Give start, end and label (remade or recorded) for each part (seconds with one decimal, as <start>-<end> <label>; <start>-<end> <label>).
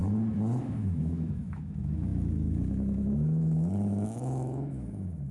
0.0-0.6 recorded; 0.6-5.3 remade